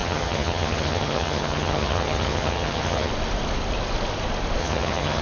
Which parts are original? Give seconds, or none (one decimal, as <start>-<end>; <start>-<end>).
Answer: 3.1-4.6